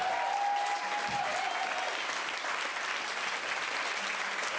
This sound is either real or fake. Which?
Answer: real